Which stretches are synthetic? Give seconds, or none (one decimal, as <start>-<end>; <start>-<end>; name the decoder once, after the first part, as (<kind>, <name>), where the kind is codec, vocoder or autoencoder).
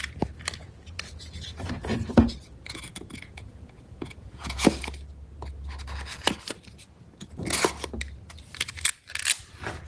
0.6-4.8 (vocoder, Vocos)